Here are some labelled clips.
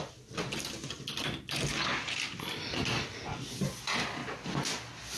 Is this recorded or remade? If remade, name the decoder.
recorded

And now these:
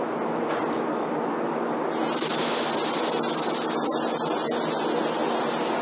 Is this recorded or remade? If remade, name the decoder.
recorded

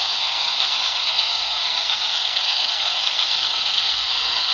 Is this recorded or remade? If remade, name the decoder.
remade, codec, SNAC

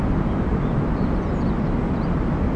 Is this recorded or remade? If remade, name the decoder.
recorded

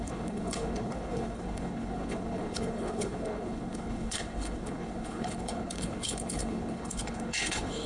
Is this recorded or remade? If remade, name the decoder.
remade, codec, HILCodec